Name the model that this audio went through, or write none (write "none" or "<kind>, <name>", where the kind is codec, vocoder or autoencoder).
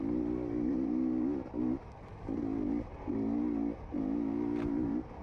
none